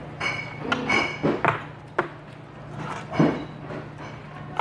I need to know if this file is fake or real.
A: real